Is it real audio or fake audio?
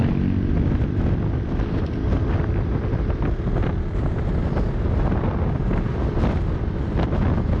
real